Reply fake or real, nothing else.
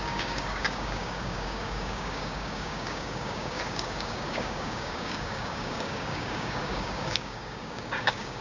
fake